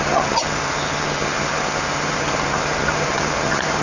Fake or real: fake